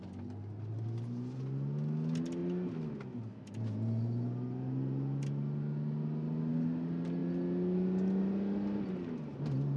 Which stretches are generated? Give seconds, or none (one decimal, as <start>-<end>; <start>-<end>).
none